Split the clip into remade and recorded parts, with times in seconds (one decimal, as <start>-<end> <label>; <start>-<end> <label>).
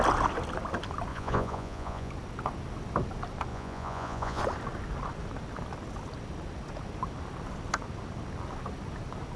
0.0-1.1 recorded; 1.1-2.1 remade; 2.1-3.5 recorded; 3.5-4.4 remade; 4.4-9.4 recorded